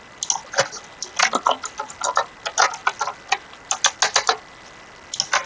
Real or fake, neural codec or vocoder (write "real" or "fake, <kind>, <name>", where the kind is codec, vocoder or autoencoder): real